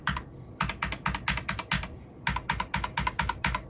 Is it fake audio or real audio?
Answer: real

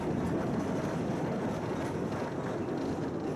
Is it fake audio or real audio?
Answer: real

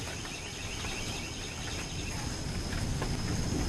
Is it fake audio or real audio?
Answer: real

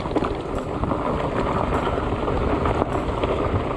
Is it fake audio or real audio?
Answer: real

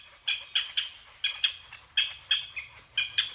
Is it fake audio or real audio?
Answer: real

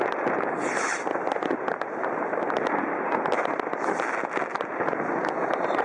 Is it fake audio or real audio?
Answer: real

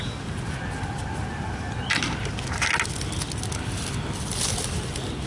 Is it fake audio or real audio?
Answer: real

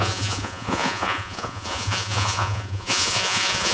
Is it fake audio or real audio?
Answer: fake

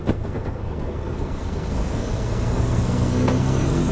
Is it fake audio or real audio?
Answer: fake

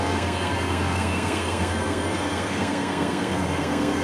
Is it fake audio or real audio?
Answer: fake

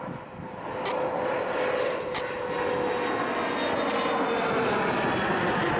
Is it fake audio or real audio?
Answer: real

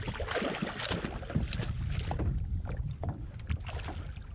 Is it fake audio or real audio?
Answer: real